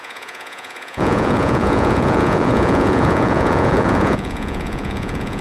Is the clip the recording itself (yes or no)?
no